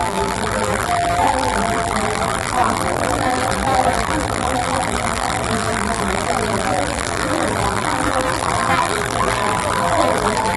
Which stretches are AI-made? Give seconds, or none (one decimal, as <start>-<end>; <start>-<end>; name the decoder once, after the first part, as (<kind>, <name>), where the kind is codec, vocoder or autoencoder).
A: 0.0-10.6 (vocoder, BigVGAN v2)